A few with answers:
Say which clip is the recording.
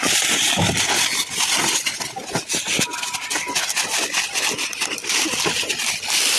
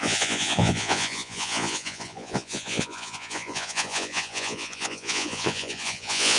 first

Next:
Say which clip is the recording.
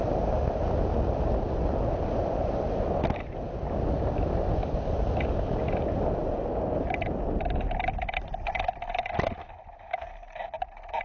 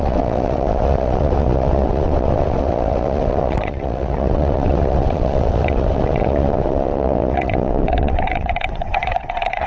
first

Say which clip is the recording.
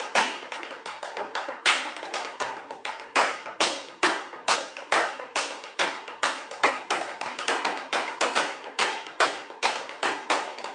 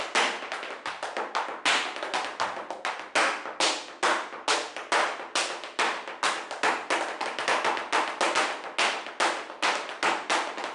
second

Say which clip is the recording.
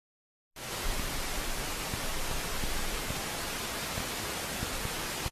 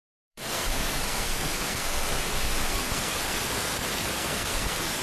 first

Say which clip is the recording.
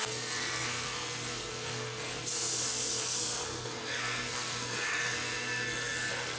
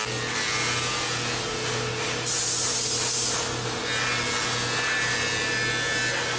second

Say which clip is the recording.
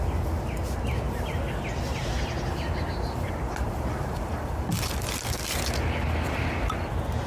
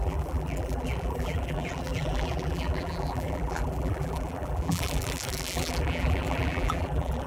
first